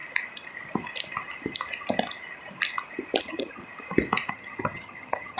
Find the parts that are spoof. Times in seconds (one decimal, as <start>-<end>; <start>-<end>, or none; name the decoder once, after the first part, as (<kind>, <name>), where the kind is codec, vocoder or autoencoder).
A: 3.2-3.6 (vocoder, HiFi-GAN); 4.3-5.4